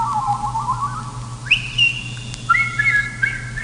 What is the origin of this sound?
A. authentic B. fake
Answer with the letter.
A